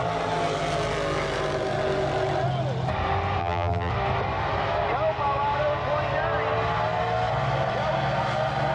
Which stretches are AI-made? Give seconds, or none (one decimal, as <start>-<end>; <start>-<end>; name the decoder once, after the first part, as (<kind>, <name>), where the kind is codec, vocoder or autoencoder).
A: 3.4-3.9 (vocoder, BigVGAN v2)